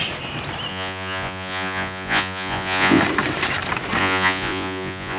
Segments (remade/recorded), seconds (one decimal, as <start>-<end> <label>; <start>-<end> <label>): 0.0-0.7 recorded; 0.7-3.0 remade; 3.0-4.0 recorded; 4.0-5.2 remade